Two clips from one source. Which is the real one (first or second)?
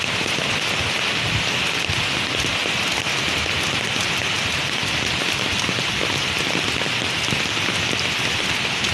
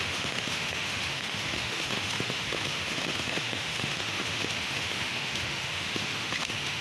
first